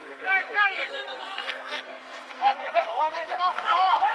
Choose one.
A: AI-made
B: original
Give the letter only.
A